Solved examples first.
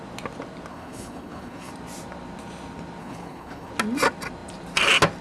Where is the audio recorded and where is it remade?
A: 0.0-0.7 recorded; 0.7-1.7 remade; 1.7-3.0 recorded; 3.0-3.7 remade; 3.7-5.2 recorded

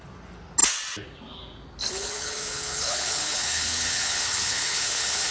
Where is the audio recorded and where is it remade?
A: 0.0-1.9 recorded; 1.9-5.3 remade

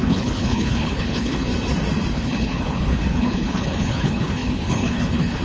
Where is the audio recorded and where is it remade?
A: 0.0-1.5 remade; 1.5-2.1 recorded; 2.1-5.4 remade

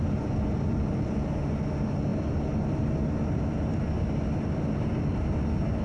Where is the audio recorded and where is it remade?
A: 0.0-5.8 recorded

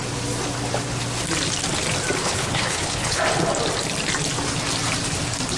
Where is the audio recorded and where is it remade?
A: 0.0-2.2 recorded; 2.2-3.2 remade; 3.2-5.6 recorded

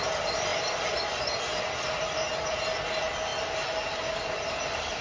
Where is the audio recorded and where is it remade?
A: 0.0-5.0 recorded

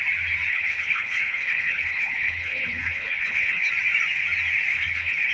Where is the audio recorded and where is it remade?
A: 0.0-0.5 recorded; 0.5-3.7 remade; 3.7-4.7 recorded; 4.7-5.3 remade

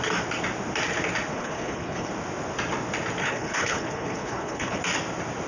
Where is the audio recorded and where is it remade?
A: 0.0-1.3 recorded; 1.3-2.1 remade; 2.1-3.2 recorded; 3.2-4.8 remade; 4.8-5.5 recorded